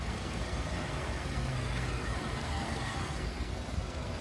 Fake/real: fake